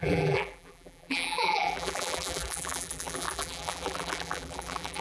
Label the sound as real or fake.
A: fake